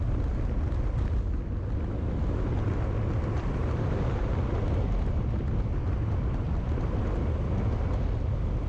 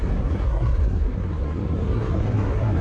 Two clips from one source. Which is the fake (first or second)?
second